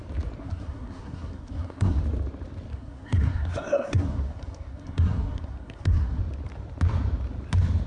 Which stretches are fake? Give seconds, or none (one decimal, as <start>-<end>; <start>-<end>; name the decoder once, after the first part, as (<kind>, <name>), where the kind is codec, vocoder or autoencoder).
0.4-2.0 (codec, SNAC); 2.7-6.2